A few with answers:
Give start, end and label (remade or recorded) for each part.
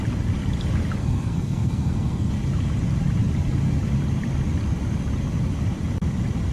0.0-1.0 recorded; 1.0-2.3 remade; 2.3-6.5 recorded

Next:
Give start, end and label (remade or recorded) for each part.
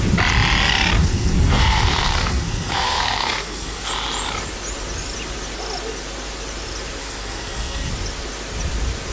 0.0-1.0 recorded; 1.0-3.9 remade; 3.9-7.0 recorded; 7.0-7.9 remade; 7.9-9.1 recorded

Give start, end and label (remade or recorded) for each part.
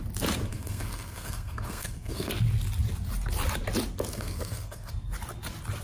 0.0-0.5 recorded; 0.5-2.3 remade; 2.3-4.1 recorded; 4.1-4.9 remade; 4.9-5.8 recorded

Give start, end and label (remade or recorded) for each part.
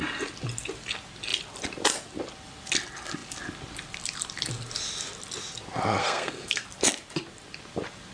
0.0-6.0 recorded; 6.0-6.6 remade; 6.6-8.1 recorded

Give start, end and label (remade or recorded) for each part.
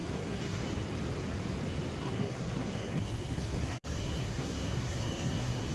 0.0-0.6 remade; 0.6-2.0 recorded; 2.0-5.7 remade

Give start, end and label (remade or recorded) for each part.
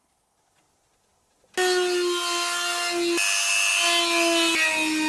0.0-5.1 recorded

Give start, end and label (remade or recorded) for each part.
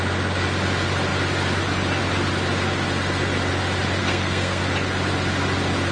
0.0-4.0 recorded; 4.0-4.6 remade; 4.6-5.9 recorded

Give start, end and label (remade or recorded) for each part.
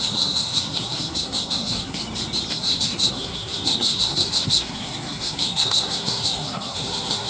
0.0-2.0 remade; 2.0-2.5 recorded; 2.5-7.3 remade